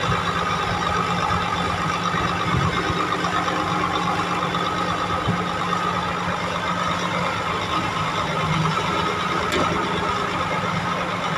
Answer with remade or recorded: recorded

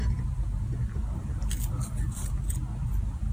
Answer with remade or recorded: recorded